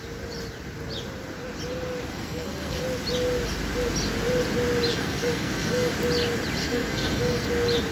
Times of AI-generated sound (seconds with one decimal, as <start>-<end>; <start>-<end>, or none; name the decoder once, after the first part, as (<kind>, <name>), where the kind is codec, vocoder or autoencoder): 2.1-2.8 (codec, SNAC); 4.9-5.9; 6.6-7.5